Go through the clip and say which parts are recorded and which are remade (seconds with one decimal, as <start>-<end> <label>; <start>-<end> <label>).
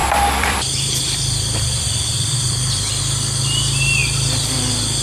0.0-3.0 remade; 3.0-5.0 recorded